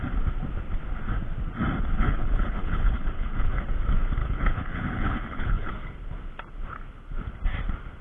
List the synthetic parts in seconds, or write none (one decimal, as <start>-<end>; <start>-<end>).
2.0-3.5; 4.2-5.7